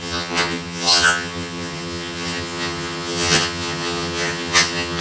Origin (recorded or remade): remade